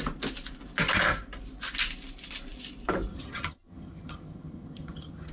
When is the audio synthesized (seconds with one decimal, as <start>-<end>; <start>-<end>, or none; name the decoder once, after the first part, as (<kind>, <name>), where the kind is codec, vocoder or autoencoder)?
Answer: 3.1-5.3 (vocoder, HiFi-GAN)